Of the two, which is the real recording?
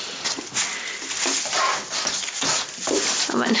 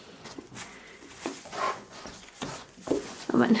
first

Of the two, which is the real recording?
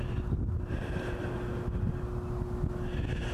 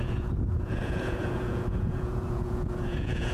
first